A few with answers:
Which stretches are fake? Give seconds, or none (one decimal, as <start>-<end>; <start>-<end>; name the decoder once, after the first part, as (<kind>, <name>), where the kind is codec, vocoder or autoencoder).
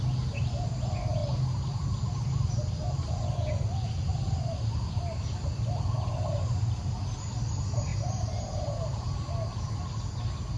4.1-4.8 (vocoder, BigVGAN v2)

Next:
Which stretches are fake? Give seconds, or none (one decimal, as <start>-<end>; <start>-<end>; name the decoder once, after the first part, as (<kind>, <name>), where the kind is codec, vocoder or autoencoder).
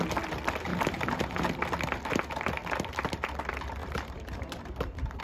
0.7-1.5 (vocoder, BigVGAN v2); 3.8-5.2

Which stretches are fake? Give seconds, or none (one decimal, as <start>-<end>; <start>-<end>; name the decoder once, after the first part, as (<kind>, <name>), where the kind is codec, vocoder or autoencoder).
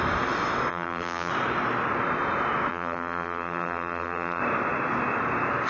0.7-1.3 (vocoder, BigVGAN v2); 2.7-4.4